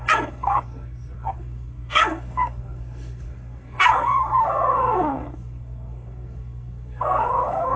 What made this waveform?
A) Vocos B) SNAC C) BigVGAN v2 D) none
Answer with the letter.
B